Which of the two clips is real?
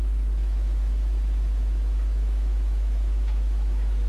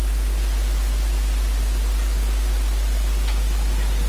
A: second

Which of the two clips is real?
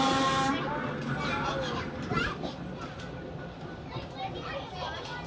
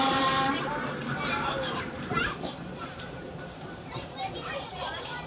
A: first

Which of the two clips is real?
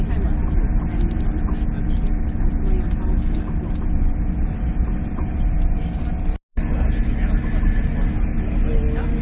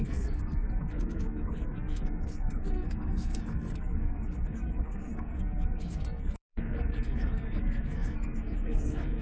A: first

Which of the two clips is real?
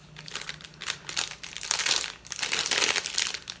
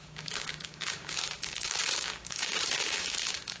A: first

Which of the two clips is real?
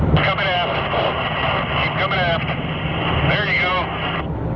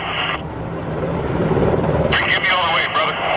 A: first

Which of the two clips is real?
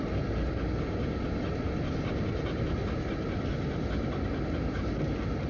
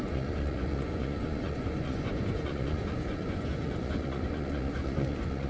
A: first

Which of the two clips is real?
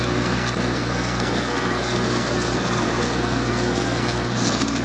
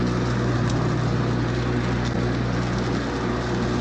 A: second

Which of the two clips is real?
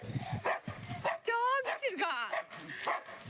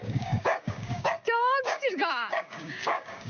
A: first